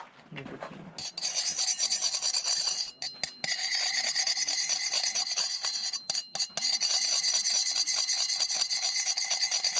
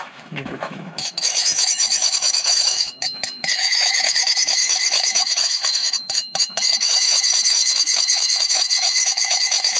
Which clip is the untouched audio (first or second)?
first